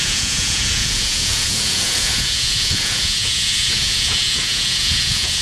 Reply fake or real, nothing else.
fake